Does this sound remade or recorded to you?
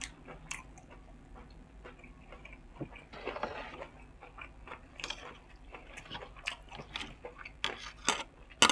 recorded